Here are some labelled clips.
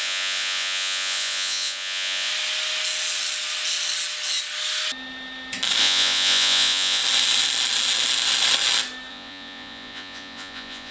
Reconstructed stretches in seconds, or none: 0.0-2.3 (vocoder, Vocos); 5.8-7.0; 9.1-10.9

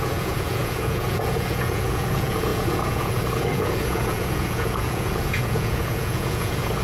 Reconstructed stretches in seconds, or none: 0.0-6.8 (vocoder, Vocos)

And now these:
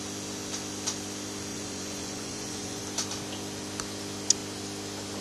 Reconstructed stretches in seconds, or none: 1.5-2.8 (vocoder, Vocos)

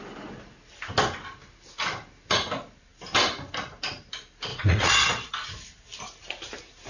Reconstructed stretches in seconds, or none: 4.5-5.3 (vocoder, Vocos)

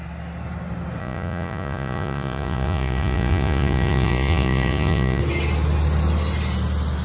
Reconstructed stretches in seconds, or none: 1.0-5.2 (vocoder, Vocos)

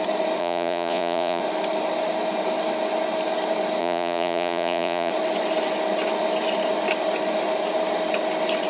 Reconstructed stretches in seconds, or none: 0.4-1.4 (vocoder, Vocos); 3.8-5.1

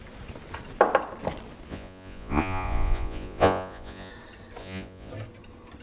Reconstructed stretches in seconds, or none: 1.7-4.1 (vocoder, Vocos); 4.6-5.1